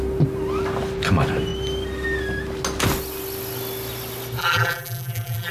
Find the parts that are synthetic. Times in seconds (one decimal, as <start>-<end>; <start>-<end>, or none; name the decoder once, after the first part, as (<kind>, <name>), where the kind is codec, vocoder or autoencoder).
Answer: 4.4-5.5 (vocoder, BigVGAN v2)